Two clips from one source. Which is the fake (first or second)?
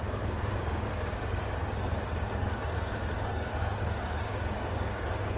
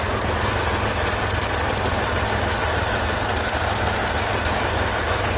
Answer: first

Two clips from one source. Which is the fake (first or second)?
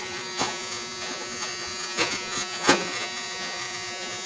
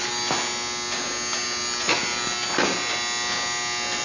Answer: first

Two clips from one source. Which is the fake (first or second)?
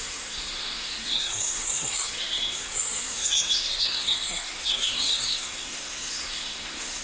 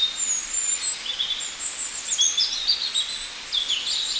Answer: first